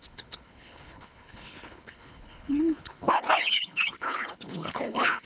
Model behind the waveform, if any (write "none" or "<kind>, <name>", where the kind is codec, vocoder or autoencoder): codec, HILCodec